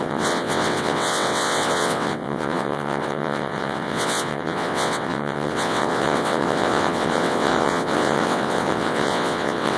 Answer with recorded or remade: remade